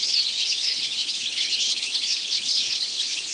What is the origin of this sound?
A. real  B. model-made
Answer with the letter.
B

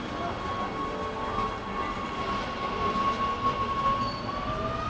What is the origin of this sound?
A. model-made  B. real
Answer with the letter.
B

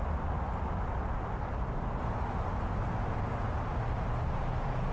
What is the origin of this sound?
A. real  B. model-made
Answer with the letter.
A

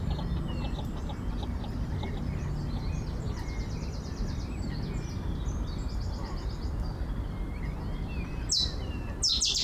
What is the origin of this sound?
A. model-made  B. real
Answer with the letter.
B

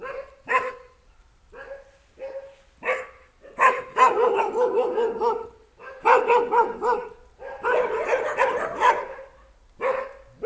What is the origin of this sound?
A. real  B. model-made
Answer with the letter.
A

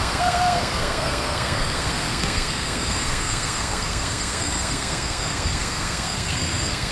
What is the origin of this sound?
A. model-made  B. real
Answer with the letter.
A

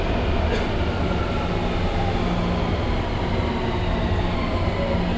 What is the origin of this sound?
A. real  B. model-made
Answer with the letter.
A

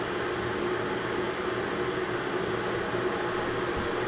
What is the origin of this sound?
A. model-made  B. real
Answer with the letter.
B